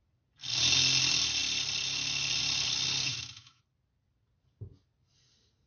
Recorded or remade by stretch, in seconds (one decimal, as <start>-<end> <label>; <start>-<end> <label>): 0.0-3.0 recorded; 3.0-3.6 remade; 3.6-5.7 recorded